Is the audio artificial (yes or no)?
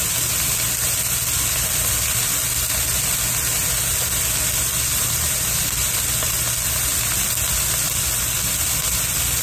no